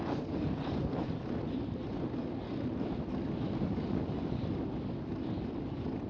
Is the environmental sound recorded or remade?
recorded